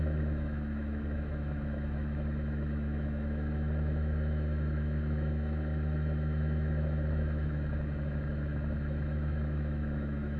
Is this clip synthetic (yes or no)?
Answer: yes